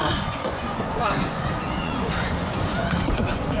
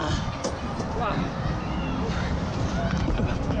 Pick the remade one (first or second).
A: first